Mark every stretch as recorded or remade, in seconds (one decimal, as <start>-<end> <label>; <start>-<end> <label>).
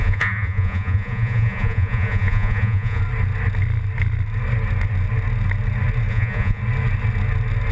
0.0-3.0 remade; 3.0-6.1 recorded; 6.1-6.6 remade; 6.6-7.7 recorded